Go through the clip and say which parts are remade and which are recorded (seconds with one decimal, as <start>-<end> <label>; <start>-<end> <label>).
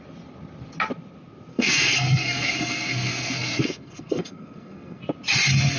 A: 0.0-1.5 recorded; 1.5-5.0 remade; 5.0-5.8 recorded